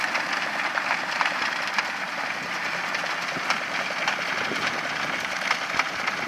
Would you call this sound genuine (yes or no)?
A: yes